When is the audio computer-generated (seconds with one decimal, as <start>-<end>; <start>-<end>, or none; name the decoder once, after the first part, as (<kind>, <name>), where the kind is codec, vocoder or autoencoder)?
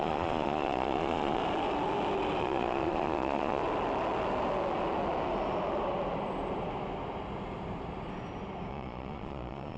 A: 0.0-1.4 (vocoder, Vocos); 2.4-3.6; 8.7-9.8